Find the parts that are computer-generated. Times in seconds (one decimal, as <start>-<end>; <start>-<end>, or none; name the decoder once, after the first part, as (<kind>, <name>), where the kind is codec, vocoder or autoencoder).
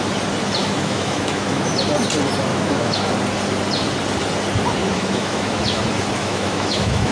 0.6-1.7 (autoencoder, DAC-VAE); 2.5-3.1; 4.8-5.8; 6.2-7.1